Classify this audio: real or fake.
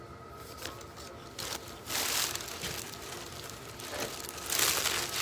real